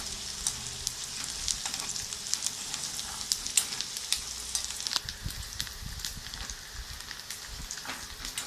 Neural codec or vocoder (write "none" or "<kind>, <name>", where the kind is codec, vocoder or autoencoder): none